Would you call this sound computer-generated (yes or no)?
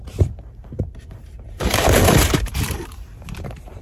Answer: yes